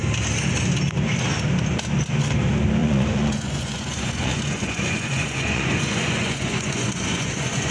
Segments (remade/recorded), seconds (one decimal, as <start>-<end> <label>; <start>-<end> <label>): 0.0-2.8 recorded; 2.8-7.7 remade